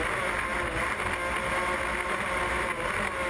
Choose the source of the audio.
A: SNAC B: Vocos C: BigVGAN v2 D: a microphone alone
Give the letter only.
D